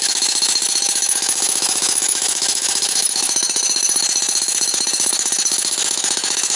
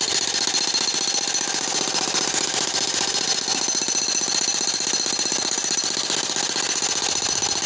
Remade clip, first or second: first